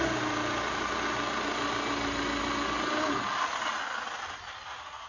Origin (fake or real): real